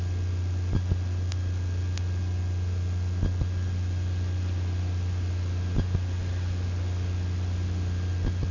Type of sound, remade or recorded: recorded